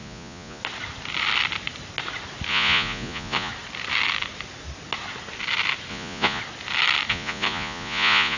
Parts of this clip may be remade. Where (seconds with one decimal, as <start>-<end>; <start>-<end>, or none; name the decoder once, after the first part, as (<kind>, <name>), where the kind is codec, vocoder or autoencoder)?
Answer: 0.0-0.6 (vocoder, Vocos); 2.5-3.5; 5.9-6.4; 7.1-8.4